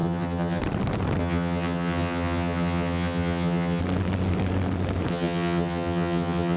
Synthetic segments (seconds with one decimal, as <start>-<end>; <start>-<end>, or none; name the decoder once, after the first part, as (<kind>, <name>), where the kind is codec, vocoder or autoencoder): 0.0-0.6 (vocoder, HiFi-GAN); 1.2-3.8; 5.1-6.6